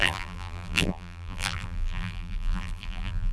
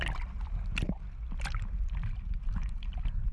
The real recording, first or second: second